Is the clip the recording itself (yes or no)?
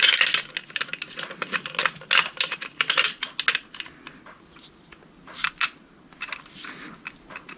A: yes